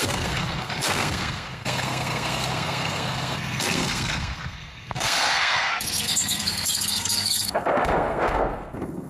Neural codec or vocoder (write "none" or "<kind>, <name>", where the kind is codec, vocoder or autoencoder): codec, SNAC